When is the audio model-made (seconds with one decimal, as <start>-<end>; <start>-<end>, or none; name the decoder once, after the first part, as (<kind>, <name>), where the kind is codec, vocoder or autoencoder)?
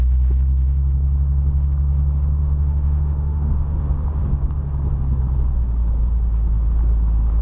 2.4-3.9 (autoencoder, DAC-VAE)